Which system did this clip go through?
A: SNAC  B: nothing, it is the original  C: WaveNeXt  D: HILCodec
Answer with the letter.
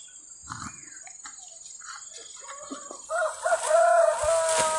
B